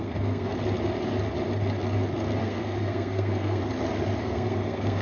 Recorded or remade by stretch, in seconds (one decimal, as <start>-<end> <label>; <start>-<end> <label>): 0.0-0.5 remade; 0.5-2.4 recorded; 2.4-3.6 remade; 3.6-4.2 recorded; 4.2-5.0 remade